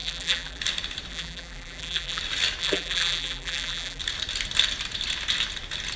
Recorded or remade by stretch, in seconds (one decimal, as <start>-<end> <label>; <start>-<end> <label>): 0.0-0.6 remade; 0.6-1.1 recorded; 1.1-2.2 remade; 2.2-2.6 recorded; 2.6-4.0 remade; 4.0-6.0 recorded